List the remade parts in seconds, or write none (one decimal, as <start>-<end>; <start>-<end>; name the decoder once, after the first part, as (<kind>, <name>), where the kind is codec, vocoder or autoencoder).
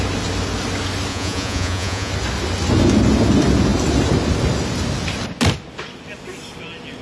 1.1-2.1 (vocoder, Vocos)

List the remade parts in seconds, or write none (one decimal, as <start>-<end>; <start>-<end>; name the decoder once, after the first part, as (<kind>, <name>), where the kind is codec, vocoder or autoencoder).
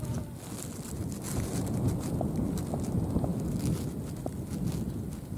none